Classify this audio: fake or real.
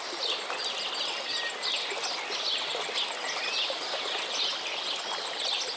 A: real